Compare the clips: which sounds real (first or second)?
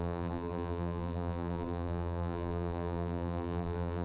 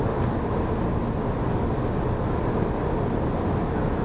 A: second